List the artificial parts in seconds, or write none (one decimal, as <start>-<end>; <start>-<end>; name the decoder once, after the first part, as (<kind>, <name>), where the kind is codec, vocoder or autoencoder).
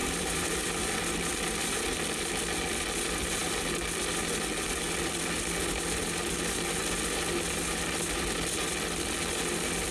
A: 0.0-0.7 (vocoder, BigVGAN v2)